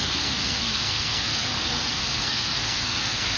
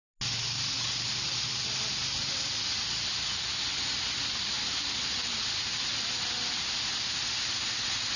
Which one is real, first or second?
second